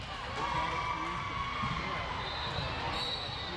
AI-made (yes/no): no